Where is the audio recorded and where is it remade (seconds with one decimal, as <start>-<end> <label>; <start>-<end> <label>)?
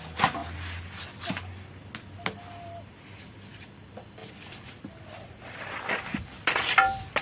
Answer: 0.0-0.4 remade; 0.4-3.2 recorded; 3.2-7.2 remade